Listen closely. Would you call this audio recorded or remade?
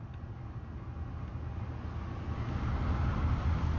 recorded